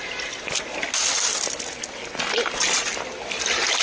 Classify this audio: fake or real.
real